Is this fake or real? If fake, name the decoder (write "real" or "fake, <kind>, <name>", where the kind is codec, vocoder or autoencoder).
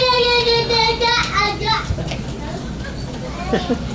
real